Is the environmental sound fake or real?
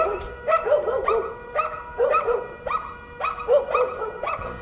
real